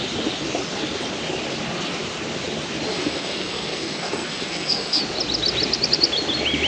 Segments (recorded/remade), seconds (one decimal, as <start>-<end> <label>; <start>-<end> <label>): 0.0-2.9 recorded; 2.9-5.0 remade; 5.0-6.7 recorded